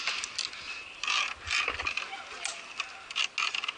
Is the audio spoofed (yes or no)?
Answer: no